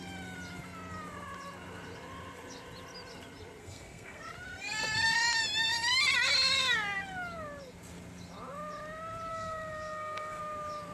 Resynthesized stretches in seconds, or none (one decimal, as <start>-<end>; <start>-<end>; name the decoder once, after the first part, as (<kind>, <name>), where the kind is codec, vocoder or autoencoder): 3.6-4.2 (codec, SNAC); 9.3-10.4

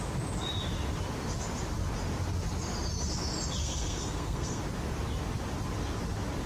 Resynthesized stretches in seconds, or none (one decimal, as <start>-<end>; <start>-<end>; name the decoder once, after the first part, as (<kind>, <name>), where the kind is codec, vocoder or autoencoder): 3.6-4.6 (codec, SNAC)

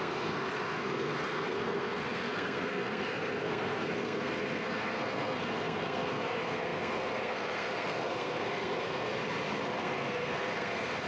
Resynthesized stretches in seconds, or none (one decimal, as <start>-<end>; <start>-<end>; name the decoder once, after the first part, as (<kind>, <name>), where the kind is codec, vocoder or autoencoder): 0.0-9.1 (codec, SNAC); 9.8-11.1